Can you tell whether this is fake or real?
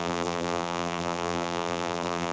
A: fake